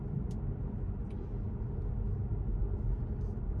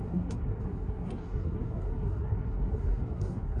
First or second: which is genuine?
first